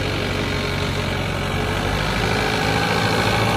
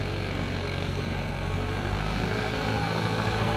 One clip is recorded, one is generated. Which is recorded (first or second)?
first